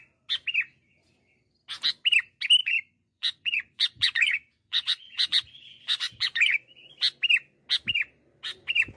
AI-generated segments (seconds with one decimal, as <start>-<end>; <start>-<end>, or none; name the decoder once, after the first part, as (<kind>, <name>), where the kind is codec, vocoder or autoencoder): 2.6-6.9 (vocoder, Vocos)